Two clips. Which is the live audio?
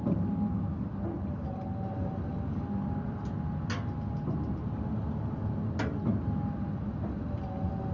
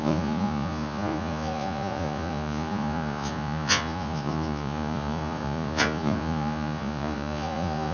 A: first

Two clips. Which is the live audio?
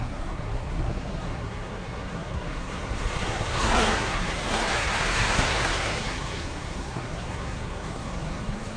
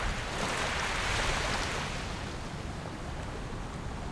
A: second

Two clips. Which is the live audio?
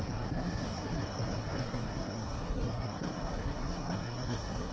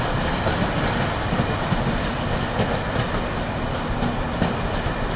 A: second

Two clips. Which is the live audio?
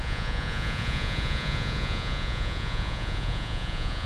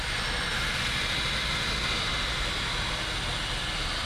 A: second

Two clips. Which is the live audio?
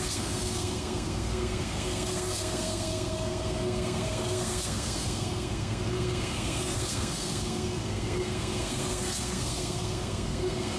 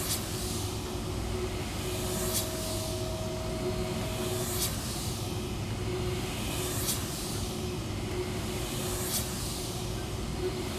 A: second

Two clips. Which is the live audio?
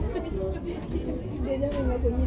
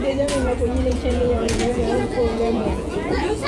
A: first